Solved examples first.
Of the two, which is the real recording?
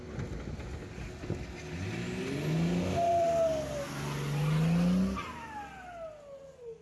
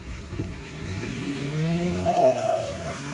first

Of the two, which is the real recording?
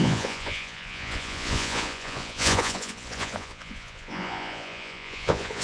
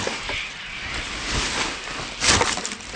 second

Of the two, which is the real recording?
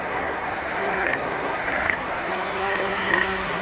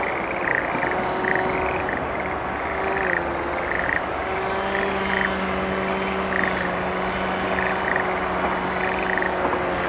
second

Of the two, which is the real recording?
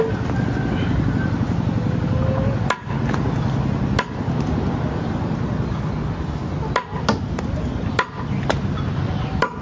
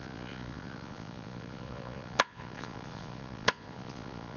first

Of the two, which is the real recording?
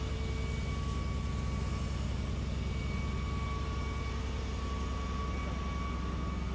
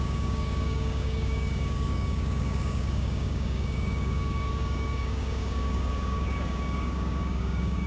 first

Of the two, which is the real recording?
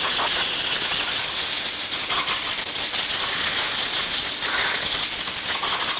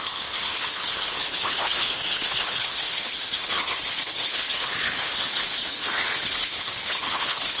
first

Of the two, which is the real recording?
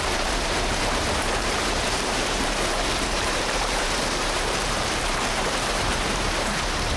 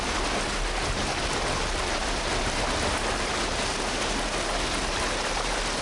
second